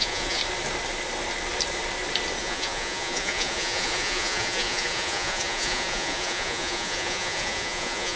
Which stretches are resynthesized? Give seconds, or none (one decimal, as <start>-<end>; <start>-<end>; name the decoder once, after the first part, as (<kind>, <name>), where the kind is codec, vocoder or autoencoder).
0.0-0.4 (vocoder, Vocos); 2.4-8.2